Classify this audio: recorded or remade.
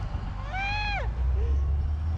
recorded